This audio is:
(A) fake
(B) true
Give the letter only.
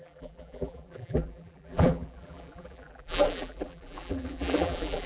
A